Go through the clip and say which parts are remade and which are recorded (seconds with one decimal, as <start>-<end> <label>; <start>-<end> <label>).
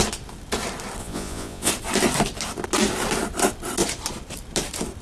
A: 0.0-1.0 recorded; 1.0-1.7 remade; 1.7-5.0 recorded